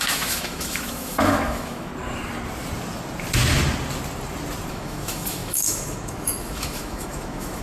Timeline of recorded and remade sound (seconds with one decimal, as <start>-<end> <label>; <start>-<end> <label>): 0.0-1.9 remade; 1.9-4.7 recorded; 4.7-7.6 remade